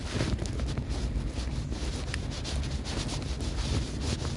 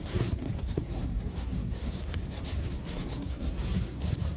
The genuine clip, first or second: first